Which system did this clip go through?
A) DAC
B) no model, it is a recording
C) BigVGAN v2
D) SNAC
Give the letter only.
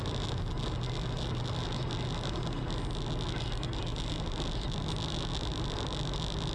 B